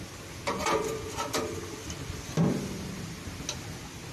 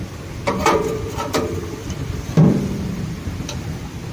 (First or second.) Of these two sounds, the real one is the first